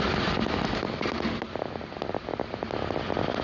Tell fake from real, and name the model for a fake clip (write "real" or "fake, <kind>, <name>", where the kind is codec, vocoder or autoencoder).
real